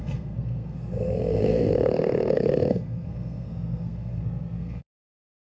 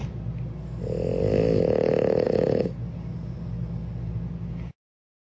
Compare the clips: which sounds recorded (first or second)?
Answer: second